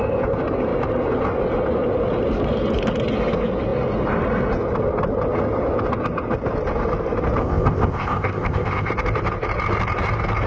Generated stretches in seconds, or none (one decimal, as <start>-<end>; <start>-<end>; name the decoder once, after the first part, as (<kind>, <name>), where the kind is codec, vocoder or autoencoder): 7.4-8.9 (codec, ZipCodec)